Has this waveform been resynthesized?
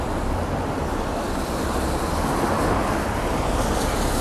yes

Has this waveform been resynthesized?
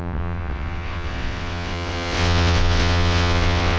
yes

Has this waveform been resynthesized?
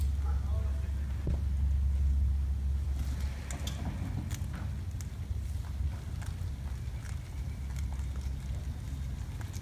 no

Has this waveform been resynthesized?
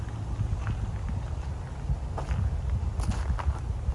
no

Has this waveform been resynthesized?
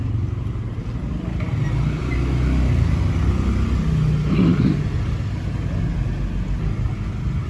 no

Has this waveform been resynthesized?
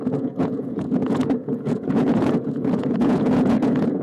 yes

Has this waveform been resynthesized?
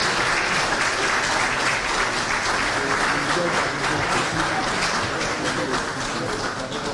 no